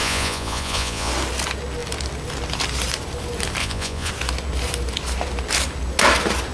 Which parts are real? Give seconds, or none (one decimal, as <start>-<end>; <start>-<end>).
1.1-3.6; 4.1-6.5